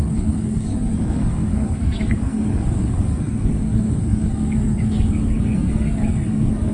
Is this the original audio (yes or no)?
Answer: no